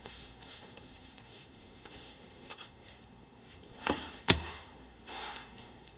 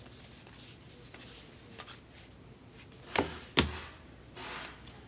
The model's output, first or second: first